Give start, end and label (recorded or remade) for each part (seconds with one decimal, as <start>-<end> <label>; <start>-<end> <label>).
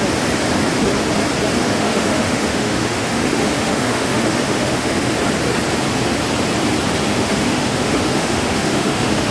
0.0-1.6 recorded; 1.6-5.1 remade; 5.1-7.1 recorded; 7.1-9.3 remade